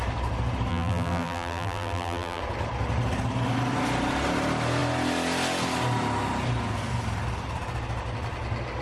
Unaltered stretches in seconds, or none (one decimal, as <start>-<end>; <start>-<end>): 0.0-0.7; 2.4-8.8